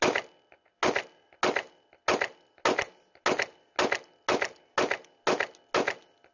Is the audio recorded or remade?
recorded